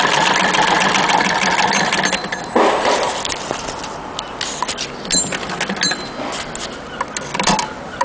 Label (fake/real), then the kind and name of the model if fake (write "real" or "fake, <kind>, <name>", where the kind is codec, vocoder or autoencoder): real